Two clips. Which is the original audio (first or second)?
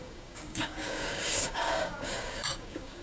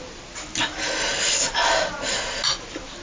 second